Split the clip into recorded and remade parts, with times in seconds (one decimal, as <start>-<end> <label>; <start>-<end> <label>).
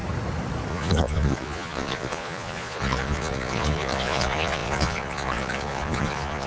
0.0-0.7 recorded; 0.7-6.5 remade